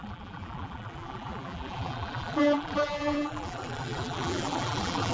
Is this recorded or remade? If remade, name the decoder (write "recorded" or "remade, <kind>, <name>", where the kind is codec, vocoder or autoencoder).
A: remade, vocoder, BigVGAN v2